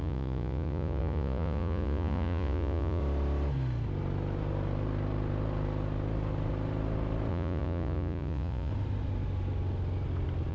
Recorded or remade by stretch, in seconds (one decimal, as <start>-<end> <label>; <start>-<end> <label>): 0.0-3.0 remade; 3.0-7.3 recorded; 7.3-8.7 remade; 8.7-10.5 recorded